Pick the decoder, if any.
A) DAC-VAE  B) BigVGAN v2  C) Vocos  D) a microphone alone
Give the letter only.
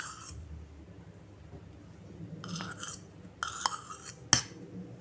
D